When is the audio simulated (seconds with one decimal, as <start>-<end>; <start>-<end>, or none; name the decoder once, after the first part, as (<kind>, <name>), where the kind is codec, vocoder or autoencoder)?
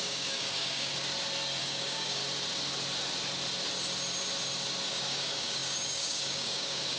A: 0.0-0.9 (codec, DAC); 1.6-2.2; 4.9-7.0